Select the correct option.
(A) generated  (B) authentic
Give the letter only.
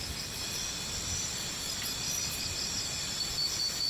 B